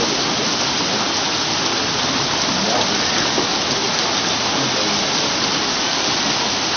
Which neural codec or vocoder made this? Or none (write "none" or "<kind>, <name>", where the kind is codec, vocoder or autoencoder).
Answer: none